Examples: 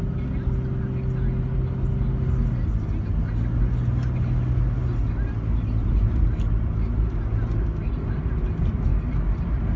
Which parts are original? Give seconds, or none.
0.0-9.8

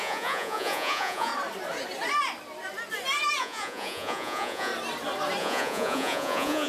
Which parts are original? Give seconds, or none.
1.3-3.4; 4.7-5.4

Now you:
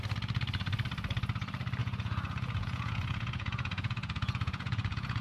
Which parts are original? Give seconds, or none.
0.0-1.8

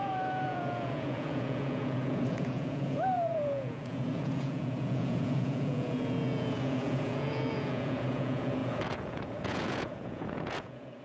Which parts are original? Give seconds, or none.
none

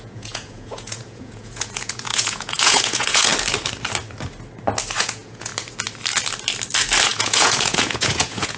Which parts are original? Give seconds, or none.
3.3-5.0; 5.5-7.2